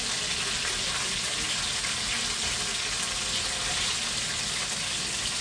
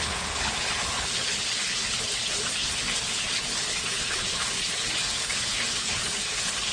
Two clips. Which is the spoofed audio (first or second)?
second